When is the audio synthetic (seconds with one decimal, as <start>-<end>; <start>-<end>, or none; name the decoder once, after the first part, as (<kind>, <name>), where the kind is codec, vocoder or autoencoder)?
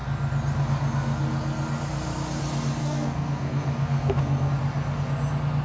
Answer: 2.8-4.5 (codec, SNAC)